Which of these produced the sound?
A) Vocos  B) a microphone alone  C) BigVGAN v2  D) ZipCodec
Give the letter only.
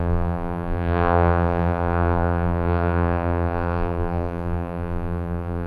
C